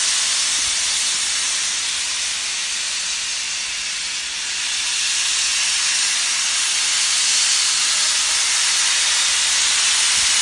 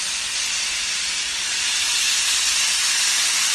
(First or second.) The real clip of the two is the first